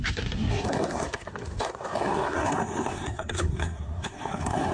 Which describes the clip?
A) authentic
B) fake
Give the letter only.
B